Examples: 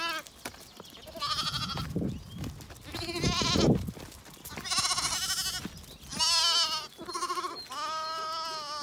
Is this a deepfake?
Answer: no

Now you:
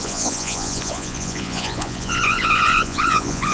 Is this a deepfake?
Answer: yes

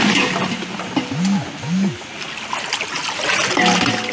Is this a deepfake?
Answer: no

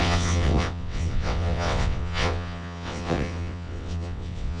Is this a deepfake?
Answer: yes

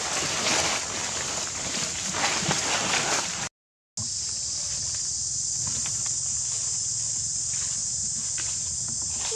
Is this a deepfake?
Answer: no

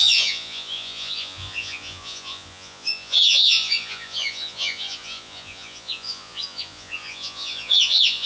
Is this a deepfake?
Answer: yes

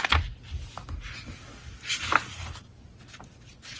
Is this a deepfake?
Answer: no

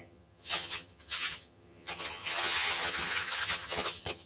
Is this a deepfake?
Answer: yes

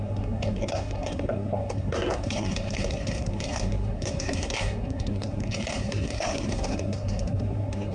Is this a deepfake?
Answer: yes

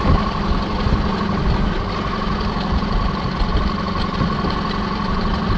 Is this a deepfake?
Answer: no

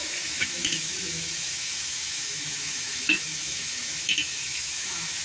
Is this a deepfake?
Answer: yes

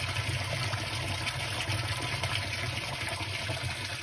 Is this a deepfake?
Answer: no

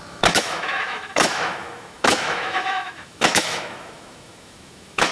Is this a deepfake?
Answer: yes